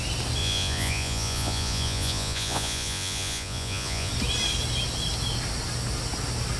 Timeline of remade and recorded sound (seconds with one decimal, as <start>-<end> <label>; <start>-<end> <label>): 0.0-0.4 recorded; 0.4-4.1 remade; 4.1-6.6 recorded